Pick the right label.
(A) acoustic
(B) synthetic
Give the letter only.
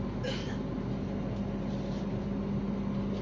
A